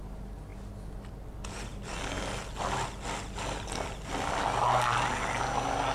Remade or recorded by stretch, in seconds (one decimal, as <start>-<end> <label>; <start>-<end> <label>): 0.0-5.9 recorded